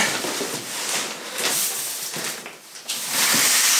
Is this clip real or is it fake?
fake